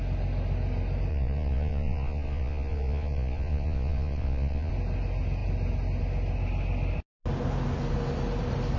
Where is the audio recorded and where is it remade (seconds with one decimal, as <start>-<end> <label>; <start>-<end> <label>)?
0.0-1.1 recorded; 1.1-4.7 remade; 4.7-8.8 recorded